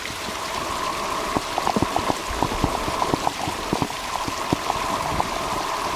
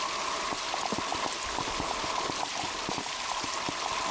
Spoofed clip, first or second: first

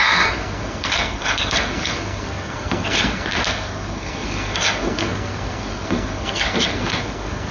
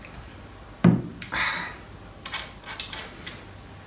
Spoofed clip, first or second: first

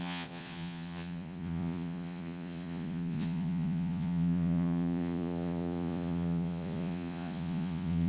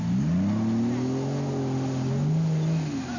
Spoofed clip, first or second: first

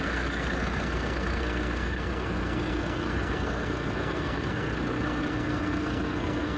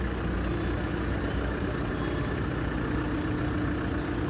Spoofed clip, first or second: first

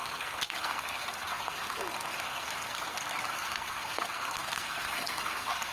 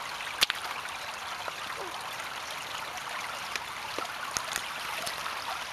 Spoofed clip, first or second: first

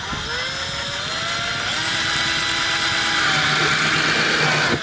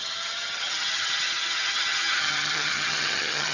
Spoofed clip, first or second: second